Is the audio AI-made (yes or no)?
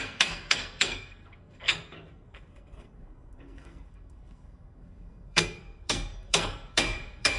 yes